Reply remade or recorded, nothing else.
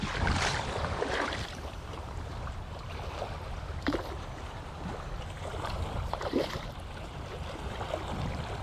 remade